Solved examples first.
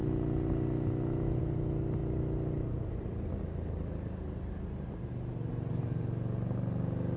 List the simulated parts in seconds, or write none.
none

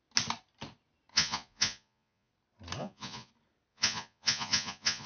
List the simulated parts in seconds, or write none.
1.1-2.3; 2.8-3.3; 3.7-5.1

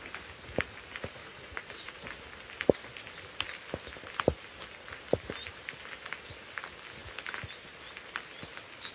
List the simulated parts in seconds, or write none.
1.2-2.0

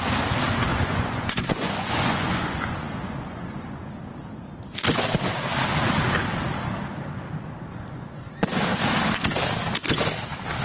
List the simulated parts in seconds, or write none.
0.7-3.9; 7.7-8.3

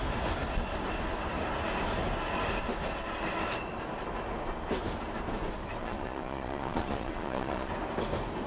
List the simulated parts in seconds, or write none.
5.8-7.7